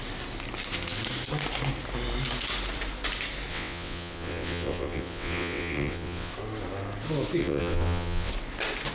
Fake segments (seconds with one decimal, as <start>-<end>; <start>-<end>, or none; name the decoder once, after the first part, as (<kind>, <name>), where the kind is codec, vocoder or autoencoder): 3.5-6.3 (vocoder, WaveNeXt); 7.4-8.3